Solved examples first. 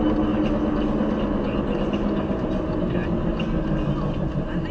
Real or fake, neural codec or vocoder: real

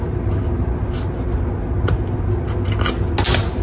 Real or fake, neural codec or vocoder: real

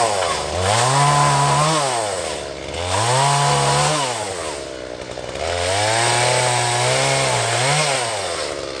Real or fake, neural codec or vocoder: real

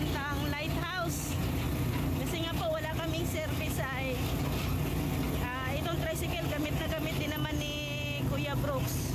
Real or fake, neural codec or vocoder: real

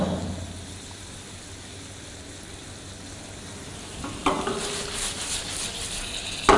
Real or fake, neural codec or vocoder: real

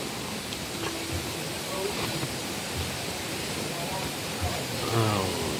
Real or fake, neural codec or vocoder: real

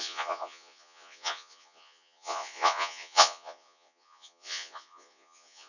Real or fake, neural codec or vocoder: fake, vocoder, Vocos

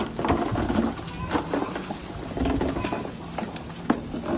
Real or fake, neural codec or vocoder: real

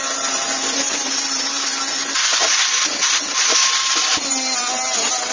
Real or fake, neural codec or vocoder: real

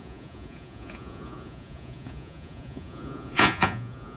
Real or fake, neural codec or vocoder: fake, vocoder, Vocos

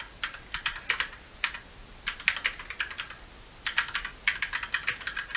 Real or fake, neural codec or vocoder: real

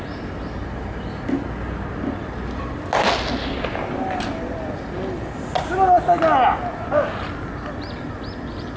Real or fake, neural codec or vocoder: real